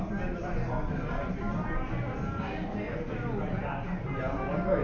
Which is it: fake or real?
real